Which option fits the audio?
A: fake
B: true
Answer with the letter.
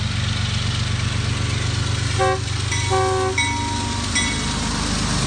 B